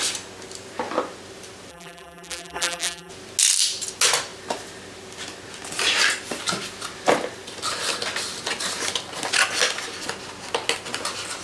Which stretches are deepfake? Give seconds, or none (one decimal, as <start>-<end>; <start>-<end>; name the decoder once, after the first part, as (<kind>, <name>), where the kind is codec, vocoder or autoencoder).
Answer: 1.7-3.1 (vocoder, BigVGAN v2)